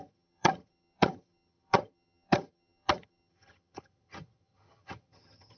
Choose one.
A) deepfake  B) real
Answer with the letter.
A